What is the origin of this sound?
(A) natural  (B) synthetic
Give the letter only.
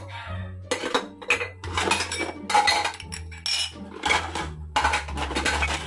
A